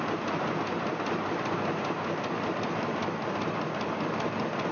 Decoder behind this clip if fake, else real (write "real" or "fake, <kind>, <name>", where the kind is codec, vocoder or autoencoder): real